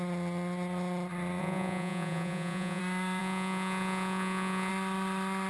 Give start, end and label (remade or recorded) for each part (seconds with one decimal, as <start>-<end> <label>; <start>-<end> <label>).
0.0-1.4 recorded; 1.4-2.8 remade; 2.8-3.2 recorded; 3.2-4.7 remade; 4.7-5.5 recorded